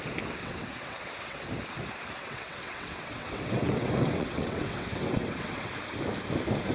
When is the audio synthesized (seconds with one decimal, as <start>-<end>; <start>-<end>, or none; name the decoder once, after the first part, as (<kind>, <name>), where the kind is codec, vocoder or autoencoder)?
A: 0.4-1.5 (vocoder, WaveNeXt); 2.2-5.7